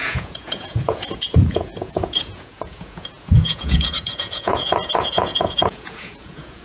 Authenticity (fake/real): fake